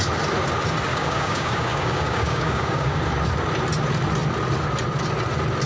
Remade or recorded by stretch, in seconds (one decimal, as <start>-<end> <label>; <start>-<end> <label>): 0.0-0.9 recorded; 0.9-3.0 remade; 3.0-5.7 recorded